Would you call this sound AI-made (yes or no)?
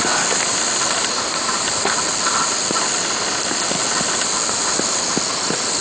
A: no